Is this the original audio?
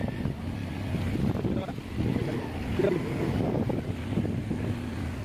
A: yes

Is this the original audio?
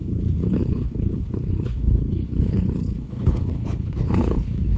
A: no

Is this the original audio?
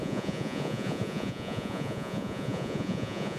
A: no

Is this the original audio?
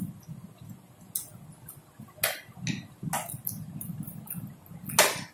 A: yes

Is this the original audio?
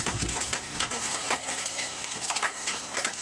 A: no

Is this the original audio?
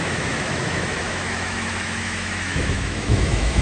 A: no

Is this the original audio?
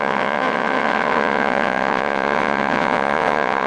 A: no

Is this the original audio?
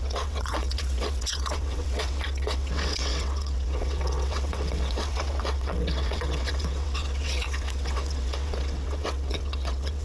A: no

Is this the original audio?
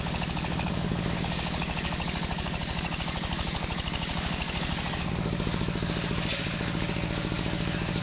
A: no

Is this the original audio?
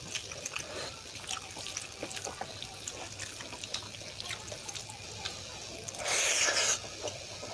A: yes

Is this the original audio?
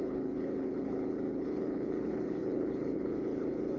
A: no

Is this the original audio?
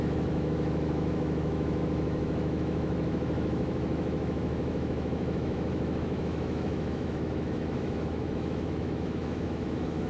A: no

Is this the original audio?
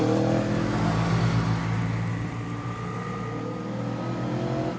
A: yes